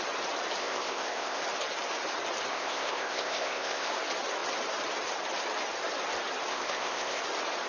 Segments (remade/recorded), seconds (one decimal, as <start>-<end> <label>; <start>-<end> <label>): 0.0-0.6 recorded; 0.6-1.4 remade; 1.4-2.5 recorded; 2.5-3.9 remade; 3.9-6.5 recorded; 6.5-7.2 remade; 7.2-7.7 recorded